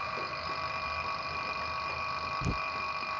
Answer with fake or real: real